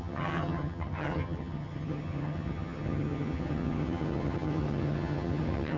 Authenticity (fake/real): fake